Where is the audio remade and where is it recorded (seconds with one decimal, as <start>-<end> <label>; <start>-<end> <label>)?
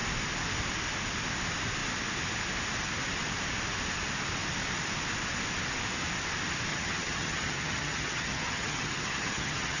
0.0-6.7 recorded; 6.7-9.8 remade